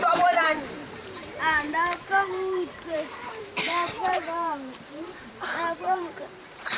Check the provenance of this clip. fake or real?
fake